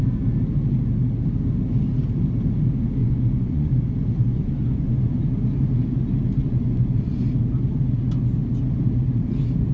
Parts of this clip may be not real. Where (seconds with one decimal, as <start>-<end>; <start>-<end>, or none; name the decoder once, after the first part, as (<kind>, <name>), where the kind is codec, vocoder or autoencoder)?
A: 3.0-3.7 (vocoder, Vocos); 4.3-5.2; 6.4-7.3

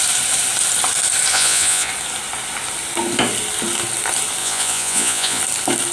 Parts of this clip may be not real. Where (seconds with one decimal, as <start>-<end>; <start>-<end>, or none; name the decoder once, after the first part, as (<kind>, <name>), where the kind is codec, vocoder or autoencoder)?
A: 1.3-1.9 (vocoder, Vocos); 4.4-5.4

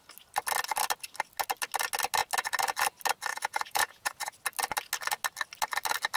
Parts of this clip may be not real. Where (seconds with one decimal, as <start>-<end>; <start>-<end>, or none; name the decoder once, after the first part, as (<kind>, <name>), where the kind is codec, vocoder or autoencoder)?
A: 3.3-4.3 (vocoder, Vocos)

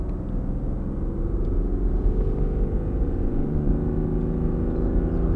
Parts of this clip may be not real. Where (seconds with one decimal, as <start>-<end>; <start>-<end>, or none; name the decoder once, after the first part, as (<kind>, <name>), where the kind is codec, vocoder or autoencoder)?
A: 3.0-3.7 (vocoder, Vocos)

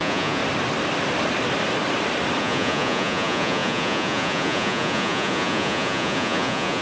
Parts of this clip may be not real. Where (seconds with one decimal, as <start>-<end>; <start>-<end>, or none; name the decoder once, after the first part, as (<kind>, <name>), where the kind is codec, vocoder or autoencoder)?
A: 0.0-0.4 (vocoder, Vocos); 2.4-6.8

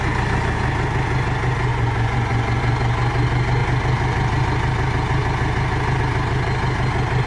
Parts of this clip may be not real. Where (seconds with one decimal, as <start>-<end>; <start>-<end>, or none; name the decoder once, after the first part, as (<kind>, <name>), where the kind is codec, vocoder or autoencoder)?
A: 1.7-2.6 (vocoder, Vocos)

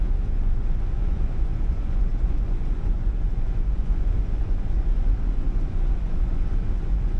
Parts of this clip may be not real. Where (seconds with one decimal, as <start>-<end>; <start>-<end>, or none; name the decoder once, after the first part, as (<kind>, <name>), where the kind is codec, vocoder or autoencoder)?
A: 0.0-7.2 (vocoder, Vocos)